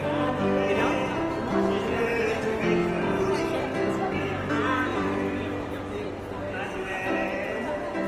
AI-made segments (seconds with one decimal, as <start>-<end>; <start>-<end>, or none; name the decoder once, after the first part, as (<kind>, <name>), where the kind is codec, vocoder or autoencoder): 4.9-6.2 (vocoder, BigVGAN v2)